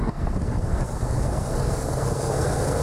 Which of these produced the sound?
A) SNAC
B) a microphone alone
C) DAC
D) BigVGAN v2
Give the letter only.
A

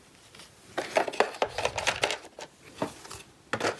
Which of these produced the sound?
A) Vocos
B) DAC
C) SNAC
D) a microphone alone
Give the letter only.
D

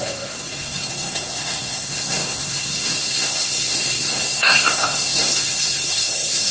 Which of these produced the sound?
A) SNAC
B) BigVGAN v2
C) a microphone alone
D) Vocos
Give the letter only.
A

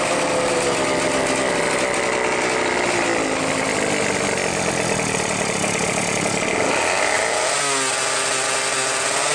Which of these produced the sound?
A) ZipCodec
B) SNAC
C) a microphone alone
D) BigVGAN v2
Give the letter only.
C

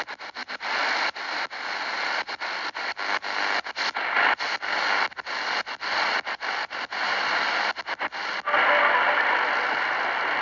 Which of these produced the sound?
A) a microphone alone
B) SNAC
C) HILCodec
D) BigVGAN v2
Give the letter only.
A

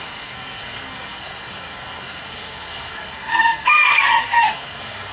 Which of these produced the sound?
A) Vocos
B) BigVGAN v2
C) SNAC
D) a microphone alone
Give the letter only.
C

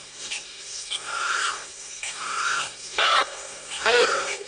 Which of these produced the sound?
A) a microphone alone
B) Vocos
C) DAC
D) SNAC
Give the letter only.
D